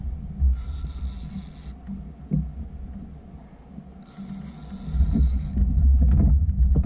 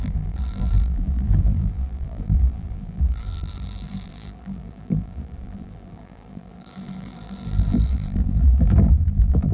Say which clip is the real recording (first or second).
first